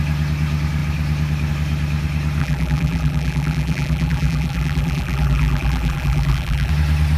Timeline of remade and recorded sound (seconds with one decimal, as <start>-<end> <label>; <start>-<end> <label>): 0.0-2.4 recorded; 2.4-6.7 remade; 6.7-7.2 recorded